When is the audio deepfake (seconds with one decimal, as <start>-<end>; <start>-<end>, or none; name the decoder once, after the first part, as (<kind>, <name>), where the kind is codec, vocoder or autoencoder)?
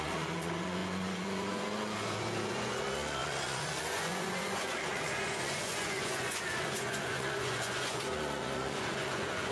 0.0-9.5 (vocoder, Vocos)